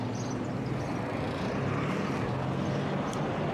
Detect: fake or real real